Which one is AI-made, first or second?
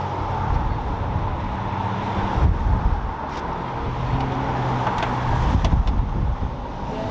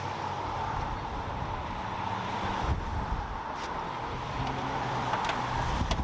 second